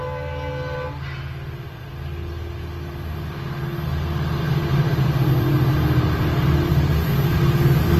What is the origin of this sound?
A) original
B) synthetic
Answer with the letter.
A